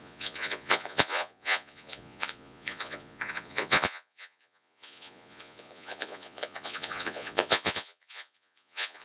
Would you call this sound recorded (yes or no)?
no